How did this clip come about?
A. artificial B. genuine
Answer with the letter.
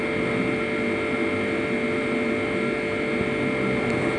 B